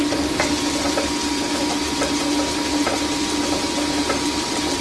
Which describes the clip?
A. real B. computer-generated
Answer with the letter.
A